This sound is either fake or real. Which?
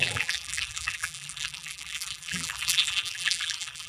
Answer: fake